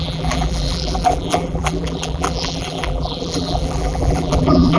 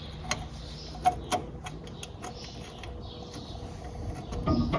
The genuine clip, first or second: second